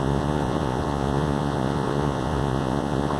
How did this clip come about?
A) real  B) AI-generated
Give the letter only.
B